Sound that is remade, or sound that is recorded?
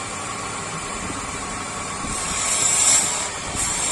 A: remade